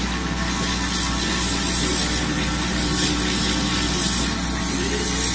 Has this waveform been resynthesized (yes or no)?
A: no